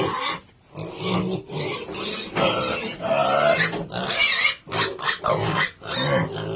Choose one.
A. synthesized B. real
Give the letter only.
B